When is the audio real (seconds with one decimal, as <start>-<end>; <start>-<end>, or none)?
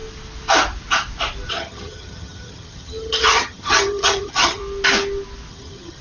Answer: 0.0-1.5; 4.6-5.5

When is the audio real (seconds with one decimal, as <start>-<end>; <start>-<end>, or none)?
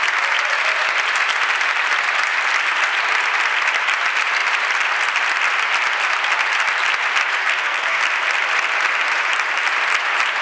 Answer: 0.0-7.4; 8.0-10.4